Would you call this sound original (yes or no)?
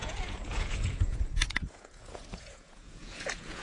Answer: no